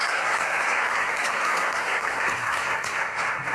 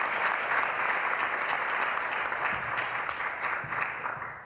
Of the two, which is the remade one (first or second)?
first